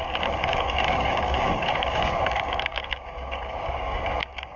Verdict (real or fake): fake